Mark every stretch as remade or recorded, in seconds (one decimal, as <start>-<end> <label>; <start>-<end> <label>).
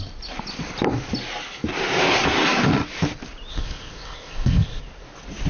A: 0.0-3.5 recorded; 3.5-4.8 remade; 4.8-5.5 recorded